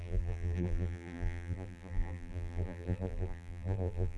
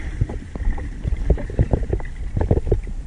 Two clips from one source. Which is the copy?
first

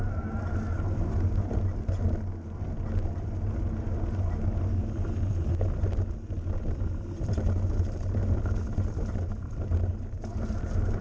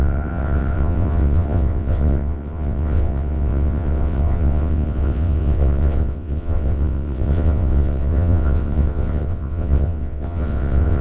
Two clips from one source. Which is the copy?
second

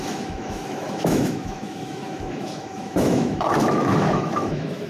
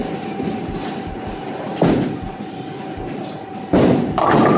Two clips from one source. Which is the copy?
first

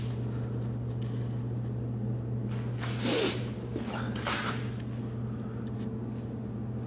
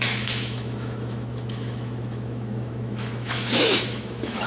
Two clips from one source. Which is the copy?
second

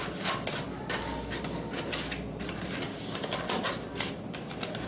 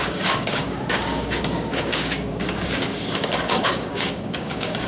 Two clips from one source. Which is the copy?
second